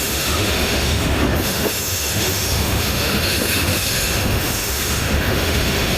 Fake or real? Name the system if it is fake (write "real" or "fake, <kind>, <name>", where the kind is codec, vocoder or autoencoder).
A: fake, autoencoder, DAC-VAE